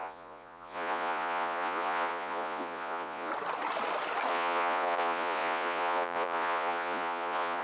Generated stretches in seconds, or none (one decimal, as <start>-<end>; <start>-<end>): 0.0-3.3; 4.3-7.6